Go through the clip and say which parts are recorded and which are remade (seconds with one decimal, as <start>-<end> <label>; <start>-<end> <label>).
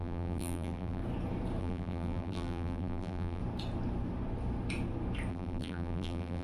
0.0-1.0 remade; 1.0-1.6 recorded; 1.6-3.4 remade; 3.4-5.3 recorded; 5.3-6.4 remade